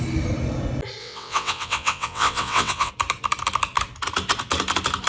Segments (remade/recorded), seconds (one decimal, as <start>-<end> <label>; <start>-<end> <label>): 0.0-1.0 recorded; 1.0-2.9 remade; 2.9-5.1 recorded